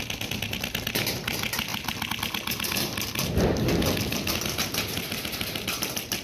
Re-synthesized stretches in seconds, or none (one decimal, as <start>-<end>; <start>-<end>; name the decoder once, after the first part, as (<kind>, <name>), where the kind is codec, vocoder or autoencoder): none